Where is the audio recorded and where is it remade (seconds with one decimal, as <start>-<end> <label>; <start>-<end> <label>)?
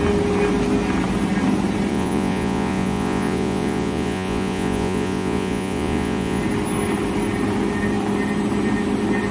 0.0-1.9 recorded; 1.9-6.4 remade; 6.4-9.3 recorded